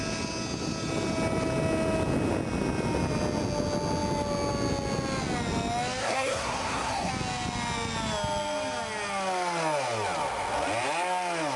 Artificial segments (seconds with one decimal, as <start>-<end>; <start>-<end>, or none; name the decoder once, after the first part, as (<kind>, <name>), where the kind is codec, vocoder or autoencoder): 6.0-7.1 (codec, SNAC)